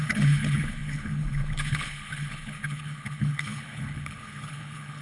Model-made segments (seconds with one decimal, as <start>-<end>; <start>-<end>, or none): 0.0-5.0

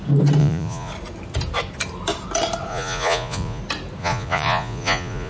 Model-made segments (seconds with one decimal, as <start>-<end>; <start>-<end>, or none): 0.4-0.9; 2.7-3.6; 4.0-5.3

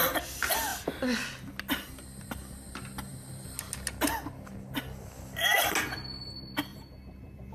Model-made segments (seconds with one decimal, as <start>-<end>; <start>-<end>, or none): 6.7-7.5

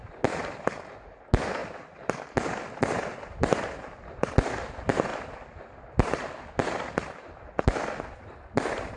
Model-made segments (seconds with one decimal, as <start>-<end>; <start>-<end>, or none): none